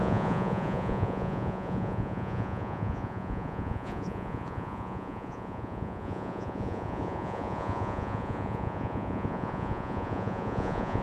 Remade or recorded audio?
remade